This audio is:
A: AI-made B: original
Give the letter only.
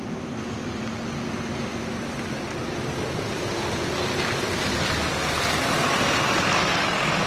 B